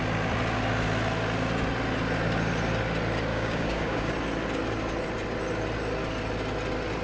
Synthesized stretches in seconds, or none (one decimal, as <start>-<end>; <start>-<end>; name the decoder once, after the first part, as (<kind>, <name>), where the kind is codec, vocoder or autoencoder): 3.3-4.1 (codec, DAC)